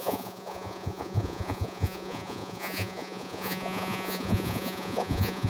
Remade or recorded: remade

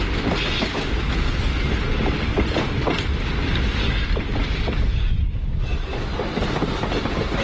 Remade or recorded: recorded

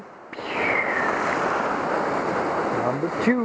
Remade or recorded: recorded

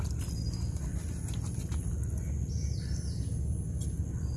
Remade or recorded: recorded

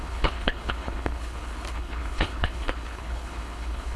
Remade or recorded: remade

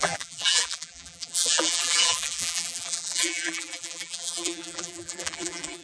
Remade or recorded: remade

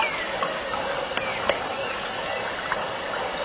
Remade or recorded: recorded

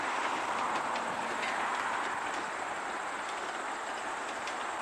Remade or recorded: recorded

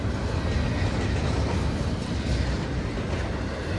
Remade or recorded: recorded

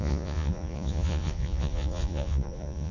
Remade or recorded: remade